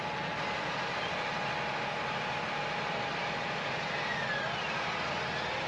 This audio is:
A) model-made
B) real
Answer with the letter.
A